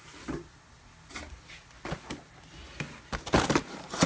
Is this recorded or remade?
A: recorded